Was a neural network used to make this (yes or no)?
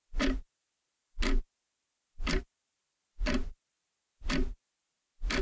no